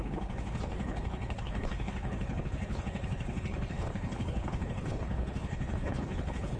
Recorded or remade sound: remade